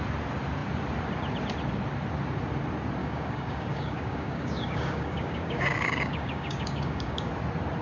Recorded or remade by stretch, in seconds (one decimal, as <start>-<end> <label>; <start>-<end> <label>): 0.0-3.0 recorded; 3.0-7.3 remade; 7.3-7.8 recorded